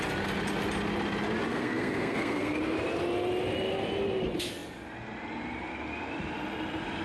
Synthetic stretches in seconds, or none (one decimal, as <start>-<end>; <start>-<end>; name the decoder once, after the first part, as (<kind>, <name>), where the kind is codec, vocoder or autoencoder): 1.5-2.6 (codec, SNAC)